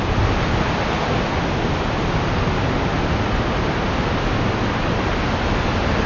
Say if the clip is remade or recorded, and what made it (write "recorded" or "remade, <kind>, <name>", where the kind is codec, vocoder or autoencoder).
recorded